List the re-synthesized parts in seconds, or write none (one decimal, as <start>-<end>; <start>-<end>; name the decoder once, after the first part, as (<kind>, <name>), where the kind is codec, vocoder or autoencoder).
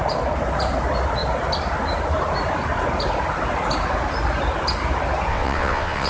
5.3-6.1 (vocoder, WaveNeXt)